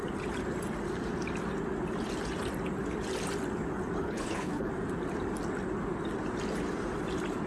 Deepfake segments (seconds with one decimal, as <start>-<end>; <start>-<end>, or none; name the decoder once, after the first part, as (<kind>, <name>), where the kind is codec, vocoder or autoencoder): 4.0-4.7 (codec, HILCodec)